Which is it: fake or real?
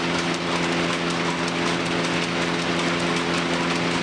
real